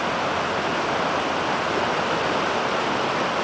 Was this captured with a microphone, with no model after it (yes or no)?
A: yes